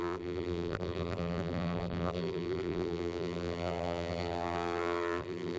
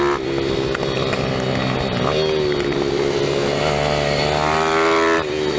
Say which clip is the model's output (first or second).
first